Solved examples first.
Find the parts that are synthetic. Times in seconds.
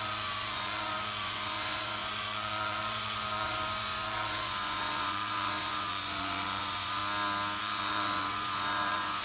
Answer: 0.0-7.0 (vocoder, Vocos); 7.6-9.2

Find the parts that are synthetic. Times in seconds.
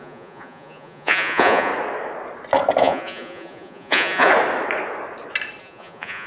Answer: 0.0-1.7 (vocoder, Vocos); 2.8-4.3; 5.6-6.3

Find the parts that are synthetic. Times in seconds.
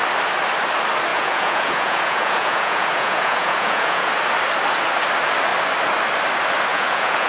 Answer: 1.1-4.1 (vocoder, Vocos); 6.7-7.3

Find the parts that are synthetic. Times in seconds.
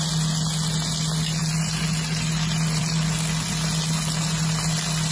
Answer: none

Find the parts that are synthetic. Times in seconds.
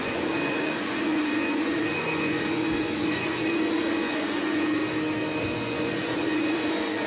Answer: 0.0-4.8 (vocoder, Vocos); 5.4-7.1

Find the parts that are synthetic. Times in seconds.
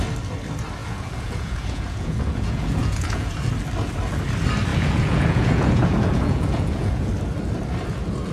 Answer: 0.8-3.5 (vocoder, Vocos); 4.7-7.1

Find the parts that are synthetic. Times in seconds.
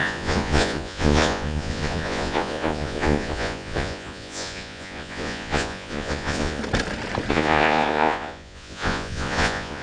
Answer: 0.0-6.6 (vocoder, Vocos); 7.3-9.8